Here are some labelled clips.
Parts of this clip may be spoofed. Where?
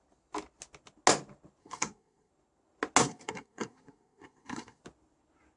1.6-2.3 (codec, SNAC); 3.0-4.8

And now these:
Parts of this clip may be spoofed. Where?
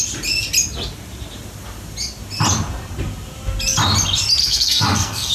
4.4-5.3 (codec, SNAC)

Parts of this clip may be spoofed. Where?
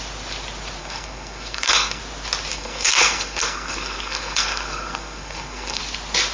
0.8-2.0 (codec, SNAC); 2.5-5.8